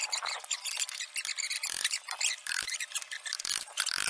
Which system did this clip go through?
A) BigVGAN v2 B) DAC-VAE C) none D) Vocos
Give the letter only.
C